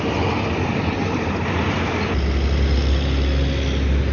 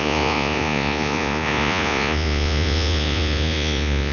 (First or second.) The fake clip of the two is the second